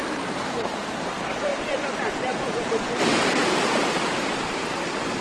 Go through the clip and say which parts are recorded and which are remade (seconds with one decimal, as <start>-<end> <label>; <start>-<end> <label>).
0.0-1.5 recorded; 1.5-4.6 remade; 4.6-5.2 recorded